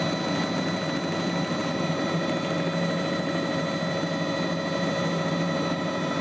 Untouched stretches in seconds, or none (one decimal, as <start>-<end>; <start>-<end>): 0.0-6.2